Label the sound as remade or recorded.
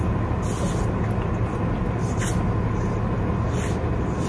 recorded